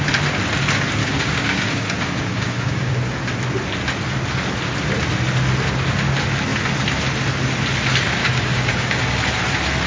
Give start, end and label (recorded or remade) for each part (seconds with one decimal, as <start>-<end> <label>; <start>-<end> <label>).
0.0-1.0 recorded; 1.0-2.9 remade; 2.9-8.2 recorded; 8.2-9.0 remade; 9.0-9.9 recorded